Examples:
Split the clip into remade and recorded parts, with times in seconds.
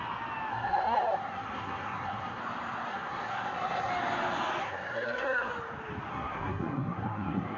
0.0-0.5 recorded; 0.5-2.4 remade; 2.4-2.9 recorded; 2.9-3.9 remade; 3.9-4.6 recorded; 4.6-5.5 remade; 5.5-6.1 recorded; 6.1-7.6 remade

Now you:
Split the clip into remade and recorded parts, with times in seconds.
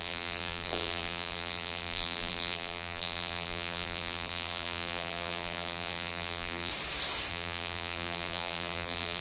0.0-6.7 remade; 6.7-7.3 recorded; 7.3-9.2 remade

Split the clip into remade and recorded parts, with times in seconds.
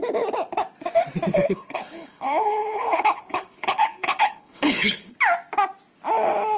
0.0-1.3 recorded; 1.3-5.1 remade; 5.1-6.6 recorded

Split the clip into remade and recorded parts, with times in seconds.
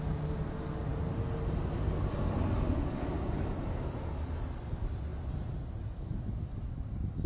0.0-5.1 recorded; 5.1-6.2 remade; 6.2-7.3 recorded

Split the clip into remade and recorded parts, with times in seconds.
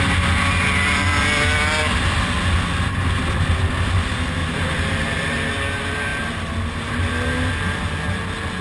0.0-4.4 recorded; 4.4-5.5 remade; 5.5-8.6 recorded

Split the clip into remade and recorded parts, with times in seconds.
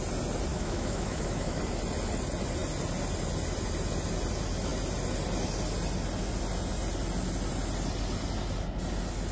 0.0-0.5 recorded; 0.5-1.6 remade; 1.6-9.3 recorded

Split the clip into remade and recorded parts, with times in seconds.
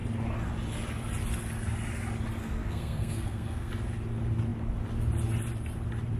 0.0-2.4 recorded; 2.4-3.7 remade; 3.7-6.2 recorded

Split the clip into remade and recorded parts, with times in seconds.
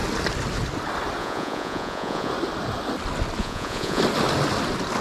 0.0-1.2 recorded; 1.2-2.3 remade; 2.3-3.4 recorded; 3.4-4.0 remade; 4.0-5.0 recorded